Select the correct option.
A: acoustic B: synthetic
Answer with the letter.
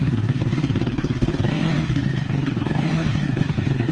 B